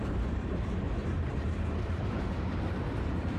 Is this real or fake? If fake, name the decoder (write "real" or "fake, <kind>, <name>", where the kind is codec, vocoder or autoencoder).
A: fake, vocoder, BigVGAN v2